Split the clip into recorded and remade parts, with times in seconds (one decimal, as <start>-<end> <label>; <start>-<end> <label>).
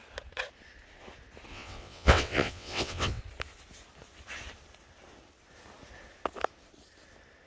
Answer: 0.0-1.5 recorded; 1.5-3.2 remade; 3.2-7.5 recorded